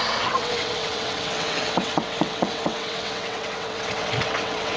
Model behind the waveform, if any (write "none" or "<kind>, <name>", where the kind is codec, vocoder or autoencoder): vocoder, WaveNeXt